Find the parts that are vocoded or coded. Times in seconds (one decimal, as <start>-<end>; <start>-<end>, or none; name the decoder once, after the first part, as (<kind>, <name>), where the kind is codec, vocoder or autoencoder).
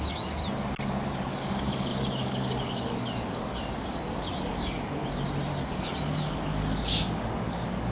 0.0-0.4 (codec, DAC); 1.1-5.0; 5.6-7.9